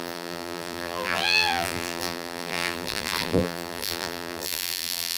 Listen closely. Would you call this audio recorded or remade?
remade